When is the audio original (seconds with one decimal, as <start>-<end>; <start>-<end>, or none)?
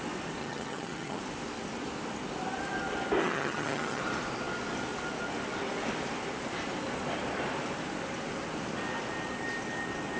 0.0-0.4; 1.2-3.2; 4.0-10.2